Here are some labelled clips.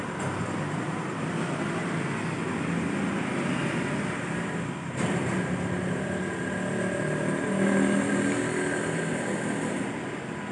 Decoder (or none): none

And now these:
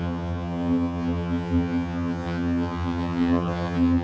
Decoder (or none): vocoder, HiFi-GAN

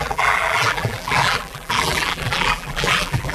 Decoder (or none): vocoder, BigVGAN v2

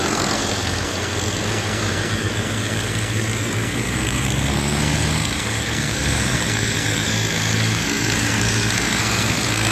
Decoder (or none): codec, SNAC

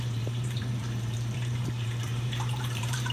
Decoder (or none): vocoder, BigVGAN v2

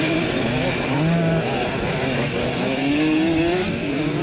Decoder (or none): none